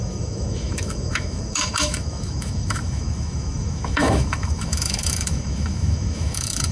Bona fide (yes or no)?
no